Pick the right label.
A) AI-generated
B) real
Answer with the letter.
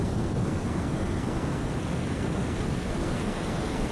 A